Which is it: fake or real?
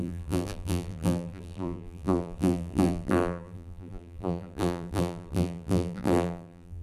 fake